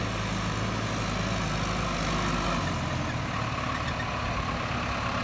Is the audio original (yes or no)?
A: yes